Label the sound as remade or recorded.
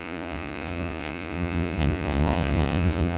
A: remade